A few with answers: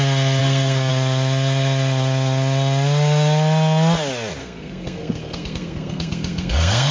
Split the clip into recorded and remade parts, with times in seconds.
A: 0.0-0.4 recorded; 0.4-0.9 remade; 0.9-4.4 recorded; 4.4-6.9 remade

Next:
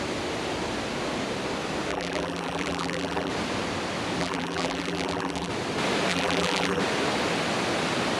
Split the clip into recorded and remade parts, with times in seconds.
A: 0.0-1.9 recorded; 1.9-3.3 remade; 3.3-4.2 recorded; 4.2-5.5 remade; 5.5-6.1 recorded; 6.1-6.8 remade; 6.8-8.2 recorded

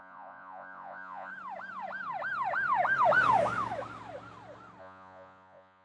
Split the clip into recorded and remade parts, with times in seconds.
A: 0.0-1.3 remade; 1.3-4.8 recorded; 4.8-5.8 remade

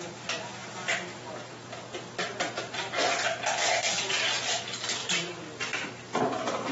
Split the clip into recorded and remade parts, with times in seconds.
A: 0.0-5.0 recorded; 5.0-5.9 remade; 5.9-6.7 recorded

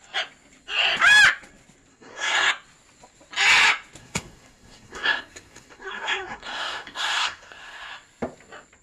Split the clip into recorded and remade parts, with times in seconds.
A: 0.0-1.9 recorded; 1.9-2.5 remade; 2.5-4.0 recorded; 4.0-7.9 remade; 7.9-8.8 recorded